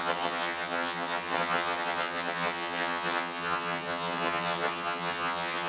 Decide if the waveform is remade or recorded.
remade